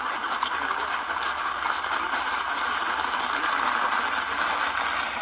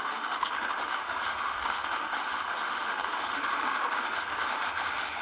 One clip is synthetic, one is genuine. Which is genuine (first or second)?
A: first